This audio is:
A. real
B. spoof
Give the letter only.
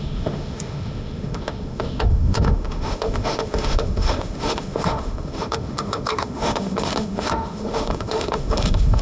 B